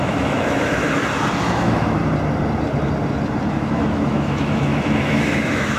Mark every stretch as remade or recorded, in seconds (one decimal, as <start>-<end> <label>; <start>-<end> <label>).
0.0-0.8 remade; 0.8-1.5 recorded; 1.5-2.0 remade; 2.0-3.5 recorded; 3.5-5.8 remade